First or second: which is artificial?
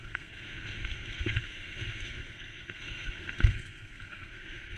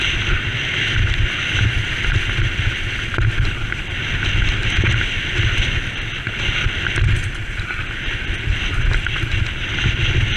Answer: first